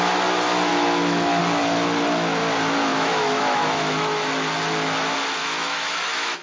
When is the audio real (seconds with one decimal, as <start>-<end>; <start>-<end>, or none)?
0.0-0.7; 1.4-2.9; 4.3-5.4